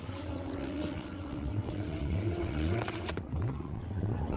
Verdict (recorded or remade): remade